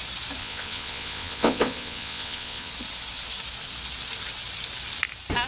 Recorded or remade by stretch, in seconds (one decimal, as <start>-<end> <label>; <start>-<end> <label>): 0.0-0.4 recorded; 0.4-2.7 remade; 2.7-5.5 recorded